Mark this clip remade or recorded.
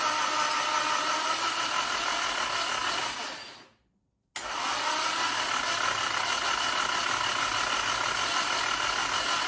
recorded